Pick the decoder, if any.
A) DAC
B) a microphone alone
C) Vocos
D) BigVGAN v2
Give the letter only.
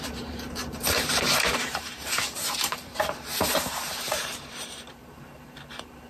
D